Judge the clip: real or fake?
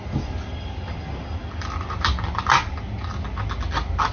real